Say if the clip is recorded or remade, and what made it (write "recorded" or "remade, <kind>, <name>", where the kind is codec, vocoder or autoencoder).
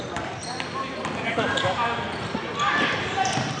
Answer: recorded